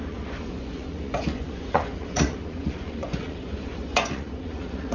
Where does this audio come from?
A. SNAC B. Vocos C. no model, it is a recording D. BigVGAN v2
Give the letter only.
B